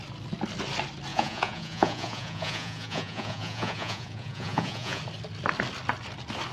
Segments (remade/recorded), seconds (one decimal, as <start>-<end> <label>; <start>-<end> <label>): 0.0-1.1 recorded; 1.1-5.0 remade; 5.0-6.5 recorded